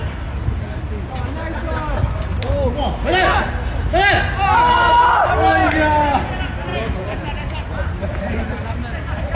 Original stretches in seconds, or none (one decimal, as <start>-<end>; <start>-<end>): 0.0-6.7; 7.9-9.4